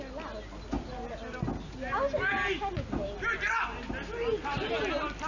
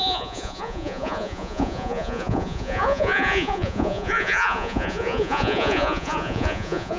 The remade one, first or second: second